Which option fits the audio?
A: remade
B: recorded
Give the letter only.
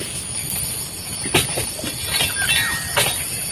B